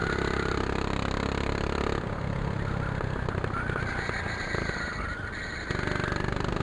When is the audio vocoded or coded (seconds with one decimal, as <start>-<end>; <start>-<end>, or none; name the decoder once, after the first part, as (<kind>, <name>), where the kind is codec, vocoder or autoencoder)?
none